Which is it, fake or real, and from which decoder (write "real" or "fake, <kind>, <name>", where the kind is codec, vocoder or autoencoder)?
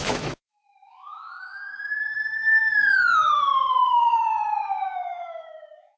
fake, autoencoder, DAC-VAE